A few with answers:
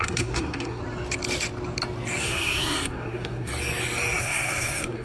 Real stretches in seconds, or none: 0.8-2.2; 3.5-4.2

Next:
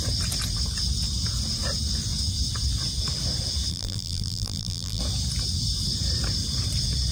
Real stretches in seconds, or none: 0.0-3.7; 5.0-7.1

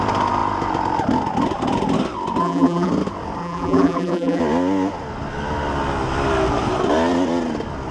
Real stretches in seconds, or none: 0.0-2.4; 2.9-3.4; 4.4-7.9

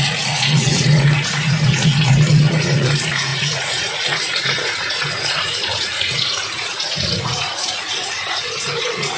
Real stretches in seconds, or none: none

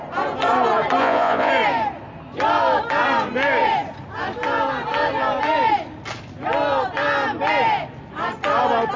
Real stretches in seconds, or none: 0.0-1.0; 1.5-9.0

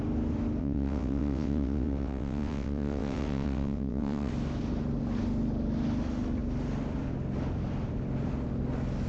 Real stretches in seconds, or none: 0.0-0.6; 4.3-9.1

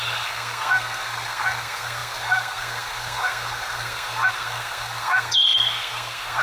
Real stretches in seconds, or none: none

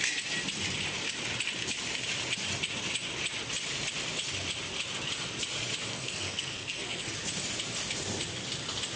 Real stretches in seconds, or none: 0.0-5.9; 7.0-9.0